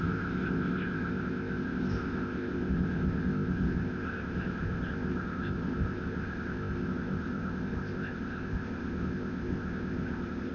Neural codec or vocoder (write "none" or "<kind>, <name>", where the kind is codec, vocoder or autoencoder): codec, ZipCodec